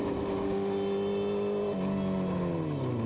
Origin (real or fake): real